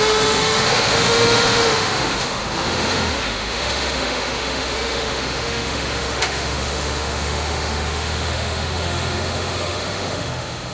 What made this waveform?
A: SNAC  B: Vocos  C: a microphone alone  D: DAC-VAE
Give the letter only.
D